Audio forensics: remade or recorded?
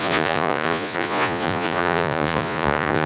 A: remade